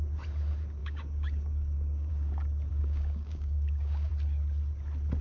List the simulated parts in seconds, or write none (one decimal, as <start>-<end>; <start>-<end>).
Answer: 0.8-2.1; 2.7-4.1

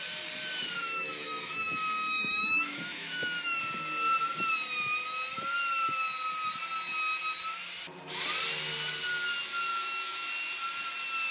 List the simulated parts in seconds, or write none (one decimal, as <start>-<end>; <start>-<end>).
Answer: 0.8-3.6; 9.7-10.3

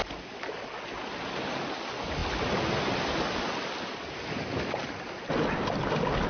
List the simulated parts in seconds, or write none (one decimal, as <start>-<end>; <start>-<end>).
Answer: none

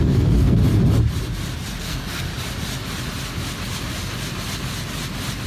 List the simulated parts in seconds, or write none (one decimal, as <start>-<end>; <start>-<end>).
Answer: 0.0-0.6; 1.8-2.3

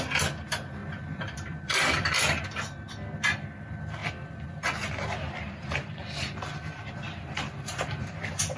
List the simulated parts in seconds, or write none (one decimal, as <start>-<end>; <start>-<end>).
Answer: 0.8-2.4; 4.0-8.6

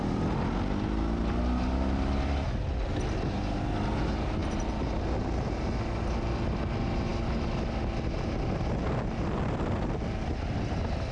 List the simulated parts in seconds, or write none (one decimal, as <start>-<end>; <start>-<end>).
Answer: none